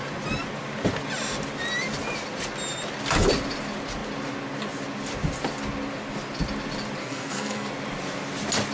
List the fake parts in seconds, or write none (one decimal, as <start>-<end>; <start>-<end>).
7.0-7.7